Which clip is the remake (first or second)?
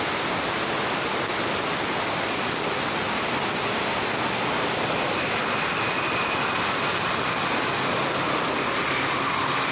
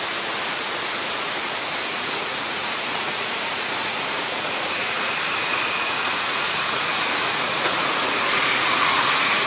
second